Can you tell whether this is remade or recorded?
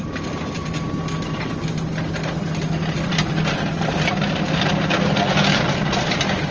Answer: recorded